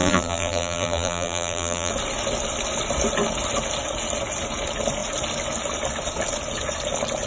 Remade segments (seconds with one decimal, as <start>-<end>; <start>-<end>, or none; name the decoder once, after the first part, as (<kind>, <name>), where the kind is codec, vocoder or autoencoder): 0.0-1.9 (vocoder, BigVGAN v2)